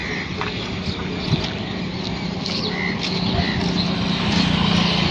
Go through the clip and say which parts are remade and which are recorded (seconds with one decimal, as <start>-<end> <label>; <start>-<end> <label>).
0.0-5.1 recorded

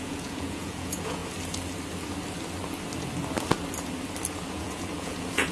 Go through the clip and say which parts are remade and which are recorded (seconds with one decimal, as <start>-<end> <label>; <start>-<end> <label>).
0.0-1.2 remade; 1.2-4.5 recorded; 4.5-5.5 remade

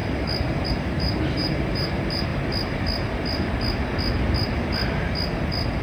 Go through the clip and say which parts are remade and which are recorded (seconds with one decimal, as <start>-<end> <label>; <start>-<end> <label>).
0.0-0.7 recorded; 0.7-2.3 remade; 2.3-5.8 recorded

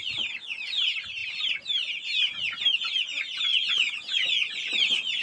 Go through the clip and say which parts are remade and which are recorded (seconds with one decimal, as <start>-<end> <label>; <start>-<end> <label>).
0.0-3.5 recorded; 3.5-4.6 remade; 4.6-5.2 recorded

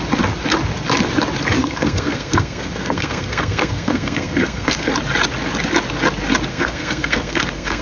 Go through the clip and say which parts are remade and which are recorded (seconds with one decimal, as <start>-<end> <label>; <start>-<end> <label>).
0.0-1.6 recorded; 1.6-4.9 remade; 4.9-6.5 recorded; 6.5-7.8 remade

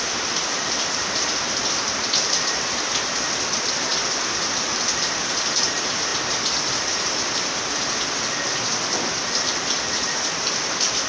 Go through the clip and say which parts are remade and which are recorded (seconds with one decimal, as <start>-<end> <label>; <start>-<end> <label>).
0.0-11.1 recorded